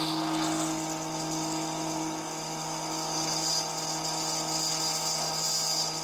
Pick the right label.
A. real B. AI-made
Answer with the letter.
A